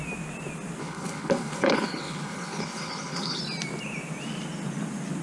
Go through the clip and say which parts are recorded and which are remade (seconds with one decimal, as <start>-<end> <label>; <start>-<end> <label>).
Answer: 0.0-0.8 recorded; 0.8-3.4 remade; 3.4-5.2 recorded